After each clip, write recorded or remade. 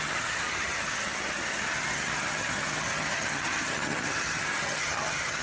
remade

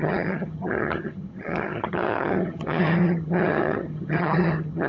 remade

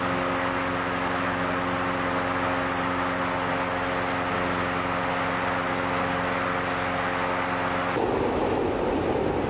recorded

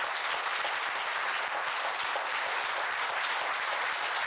recorded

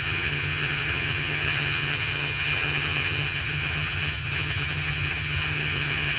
remade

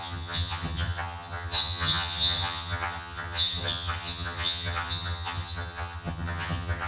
remade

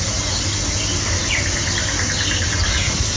recorded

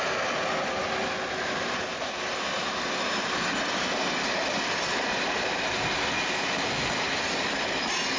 recorded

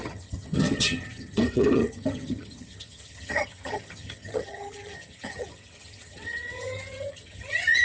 remade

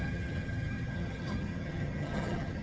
remade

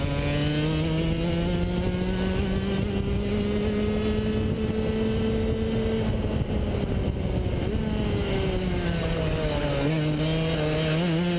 recorded